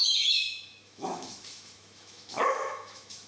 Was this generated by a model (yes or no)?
yes